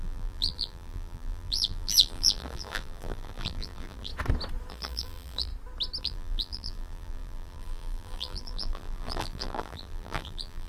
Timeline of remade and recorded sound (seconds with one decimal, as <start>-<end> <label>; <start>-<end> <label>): 0.0-4.1 remade; 4.1-4.7 recorded; 4.7-5.5 remade; 5.5-6.0 recorded; 6.0-10.7 remade